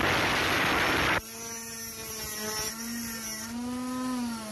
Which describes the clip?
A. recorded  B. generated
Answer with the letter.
A